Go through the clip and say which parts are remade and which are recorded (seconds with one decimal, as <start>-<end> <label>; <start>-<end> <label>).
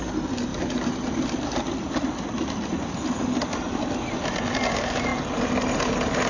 0.0-6.3 recorded